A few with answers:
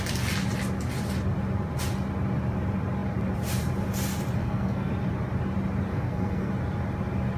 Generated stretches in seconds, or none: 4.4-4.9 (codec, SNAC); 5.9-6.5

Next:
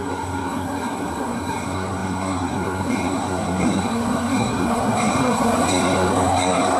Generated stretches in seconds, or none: 0.0-6.8 (codec, SNAC)

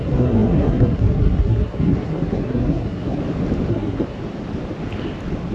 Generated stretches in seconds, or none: 0.0-3.2 (codec, SNAC); 3.7-4.2

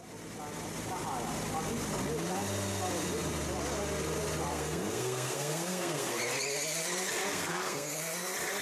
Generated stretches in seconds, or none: 4.5-6.2 (codec, SNAC); 7.3-8.0